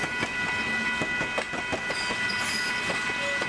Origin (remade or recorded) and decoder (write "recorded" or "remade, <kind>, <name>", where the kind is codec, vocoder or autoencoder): recorded